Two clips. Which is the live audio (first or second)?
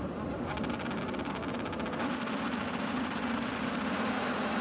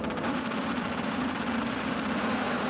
first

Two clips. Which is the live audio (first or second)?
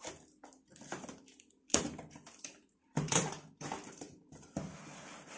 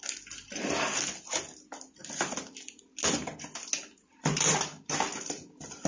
second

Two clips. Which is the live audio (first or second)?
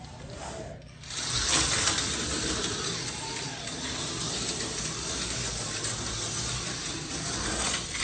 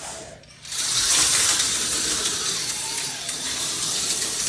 first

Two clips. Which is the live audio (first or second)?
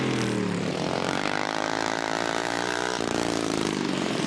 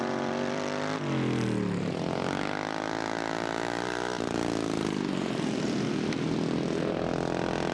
second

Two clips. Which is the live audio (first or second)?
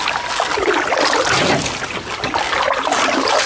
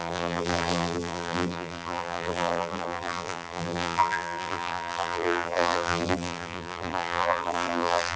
first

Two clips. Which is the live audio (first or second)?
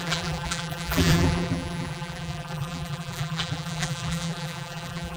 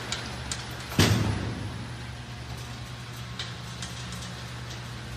second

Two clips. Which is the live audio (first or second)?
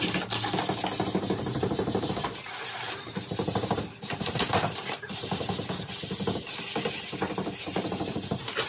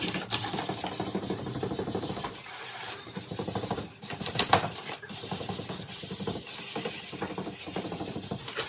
first